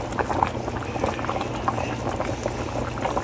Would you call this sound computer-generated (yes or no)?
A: no